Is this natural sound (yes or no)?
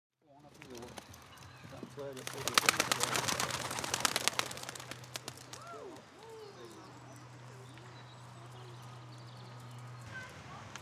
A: yes